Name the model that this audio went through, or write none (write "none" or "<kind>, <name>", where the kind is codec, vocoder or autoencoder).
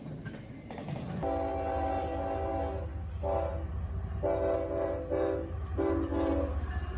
none